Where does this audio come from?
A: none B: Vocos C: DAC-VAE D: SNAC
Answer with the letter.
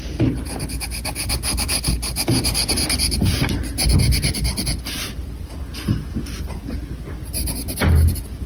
A